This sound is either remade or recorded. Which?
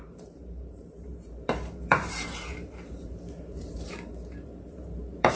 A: remade